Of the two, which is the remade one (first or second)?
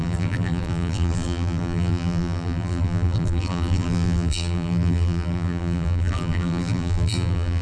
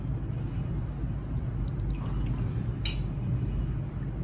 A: first